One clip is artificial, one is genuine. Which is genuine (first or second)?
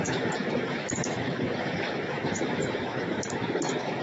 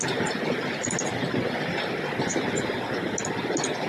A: second